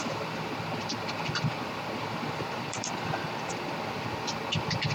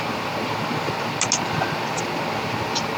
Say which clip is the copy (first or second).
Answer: first